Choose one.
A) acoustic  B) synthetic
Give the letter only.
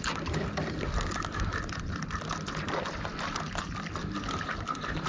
A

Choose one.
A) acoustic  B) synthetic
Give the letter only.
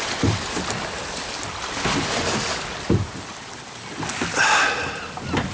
A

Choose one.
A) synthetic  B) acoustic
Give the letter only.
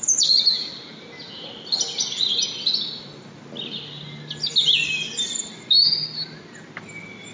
B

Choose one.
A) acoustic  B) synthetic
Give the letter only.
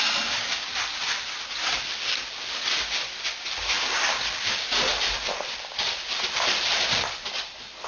A